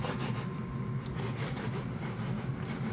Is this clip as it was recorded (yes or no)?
yes